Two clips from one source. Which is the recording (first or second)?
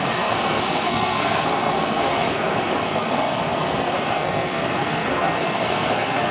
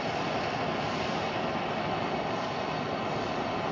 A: second